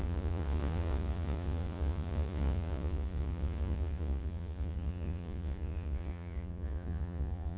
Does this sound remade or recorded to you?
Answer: remade